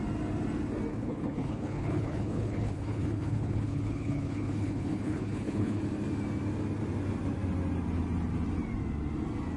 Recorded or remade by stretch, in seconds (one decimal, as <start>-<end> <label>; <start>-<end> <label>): 0.0-0.9 recorded; 0.9-5.8 remade; 5.8-9.6 recorded

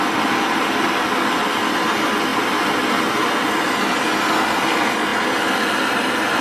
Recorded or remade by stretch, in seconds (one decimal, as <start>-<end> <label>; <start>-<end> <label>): 0.0-6.4 recorded

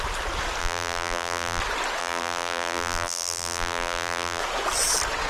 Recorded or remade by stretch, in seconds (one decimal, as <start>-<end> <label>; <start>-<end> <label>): 0.0-0.6 recorded; 0.6-1.6 remade; 1.6-2.0 recorded; 2.0-4.4 remade; 4.4-5.3 recorded

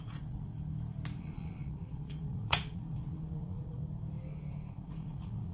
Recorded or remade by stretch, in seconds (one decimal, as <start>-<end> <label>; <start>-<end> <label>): 0.0-0.5 remade; 0.5-1.2 recorded; 1.2-3.8 remade; 3.8-4.7 recorded; 4.7-5.5 remade